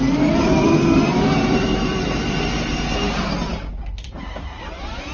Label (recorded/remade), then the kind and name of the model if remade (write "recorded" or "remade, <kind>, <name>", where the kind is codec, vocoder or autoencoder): recorded